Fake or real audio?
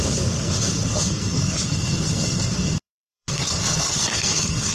fake